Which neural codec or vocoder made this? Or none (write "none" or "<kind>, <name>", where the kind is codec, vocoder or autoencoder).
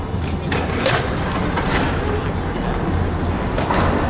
none